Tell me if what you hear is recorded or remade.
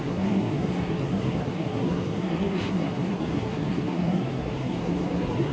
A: remade